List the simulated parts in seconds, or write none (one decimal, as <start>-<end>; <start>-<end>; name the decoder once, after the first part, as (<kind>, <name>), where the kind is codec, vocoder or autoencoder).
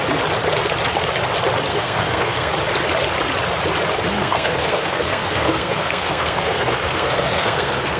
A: 1.7-2.5 (codec, SNAC); 4.1-8.0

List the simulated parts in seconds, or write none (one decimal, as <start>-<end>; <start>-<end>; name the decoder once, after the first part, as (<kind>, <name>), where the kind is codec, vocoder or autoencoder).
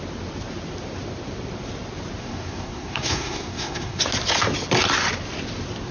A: 2.2-4.0 (codec, SNAC)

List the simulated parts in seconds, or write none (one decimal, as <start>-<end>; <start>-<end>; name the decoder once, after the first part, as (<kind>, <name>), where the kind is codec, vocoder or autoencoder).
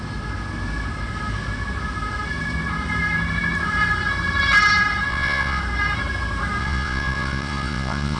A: 5.1-5.6 (vocoder, Vocos); 6.6-8.2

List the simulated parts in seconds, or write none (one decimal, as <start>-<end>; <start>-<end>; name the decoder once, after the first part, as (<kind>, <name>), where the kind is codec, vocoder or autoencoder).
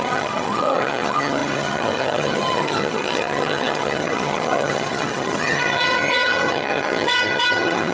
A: 0.0-7.9 (vocoder, HiFi-GAN)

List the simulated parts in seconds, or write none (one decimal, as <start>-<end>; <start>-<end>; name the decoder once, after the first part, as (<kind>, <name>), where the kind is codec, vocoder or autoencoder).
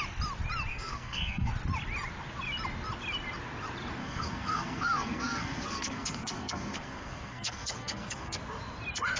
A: 0.7-1.5 (codec, SNAC); 4.0-8.4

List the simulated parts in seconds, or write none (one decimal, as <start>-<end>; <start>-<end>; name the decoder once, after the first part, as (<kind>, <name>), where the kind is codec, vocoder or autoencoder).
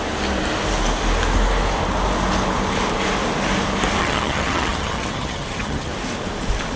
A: 4.0-5.9 (vocoder, HiFi-GAN)